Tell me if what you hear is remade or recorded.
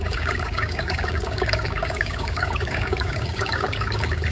remade